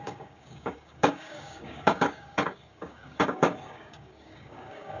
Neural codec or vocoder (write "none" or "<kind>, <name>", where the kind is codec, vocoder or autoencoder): codec, DAC